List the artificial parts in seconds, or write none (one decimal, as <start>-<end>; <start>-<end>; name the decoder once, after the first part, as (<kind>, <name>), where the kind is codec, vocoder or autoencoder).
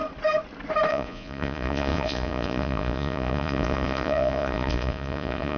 0.9-5.6 (vocoder, Vocos)